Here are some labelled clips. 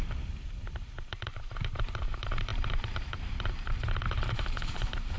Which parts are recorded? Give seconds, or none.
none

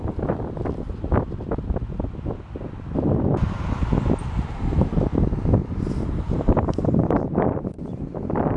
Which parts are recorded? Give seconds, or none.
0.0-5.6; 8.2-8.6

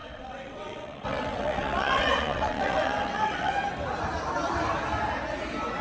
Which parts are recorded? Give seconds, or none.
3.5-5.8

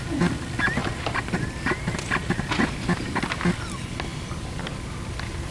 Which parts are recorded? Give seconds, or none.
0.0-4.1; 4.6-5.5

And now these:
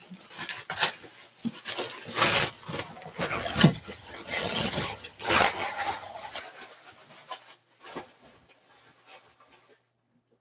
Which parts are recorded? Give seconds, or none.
0.0-3.3; 6.4-10.4

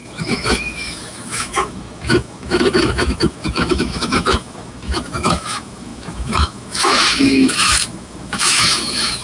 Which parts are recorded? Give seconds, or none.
none

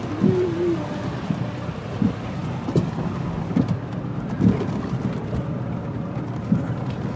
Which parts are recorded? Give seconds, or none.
0.0-7.2

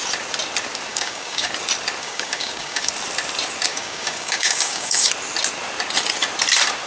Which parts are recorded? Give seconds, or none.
0.0-0.9; 1.5-2.0; 2.9-3.7; 5.1-6.9